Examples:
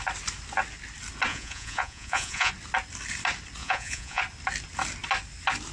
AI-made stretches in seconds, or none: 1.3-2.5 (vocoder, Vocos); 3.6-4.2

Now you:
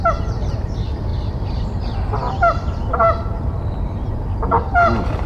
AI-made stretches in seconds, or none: none

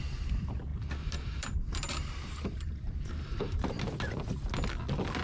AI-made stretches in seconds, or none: 0.7-3.8 (vocoder, BigVGAN v2)

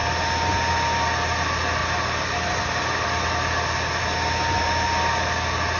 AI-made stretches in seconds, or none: none

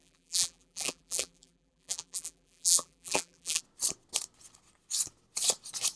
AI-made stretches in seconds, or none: 0.0-3.6 (vocoder, BigVGAN v2)

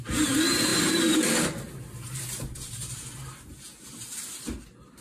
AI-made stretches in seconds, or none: none